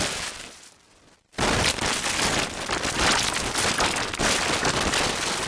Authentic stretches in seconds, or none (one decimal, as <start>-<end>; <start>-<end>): 0.0-5.5